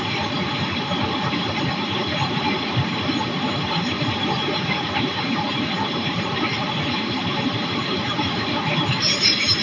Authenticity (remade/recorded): remade